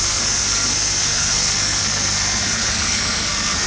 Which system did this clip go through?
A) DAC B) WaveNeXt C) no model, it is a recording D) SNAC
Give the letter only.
D